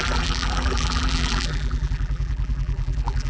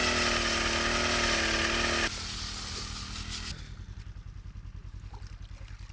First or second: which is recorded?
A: second